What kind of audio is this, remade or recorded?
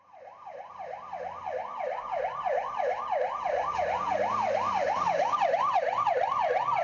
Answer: recorded